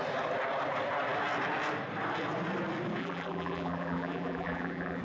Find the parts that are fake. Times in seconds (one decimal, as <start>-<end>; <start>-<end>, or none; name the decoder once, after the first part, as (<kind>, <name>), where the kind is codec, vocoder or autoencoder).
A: 3.0-5.0 (vocoder, BigVGAN v2)